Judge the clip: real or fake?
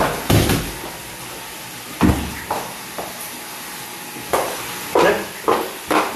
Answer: real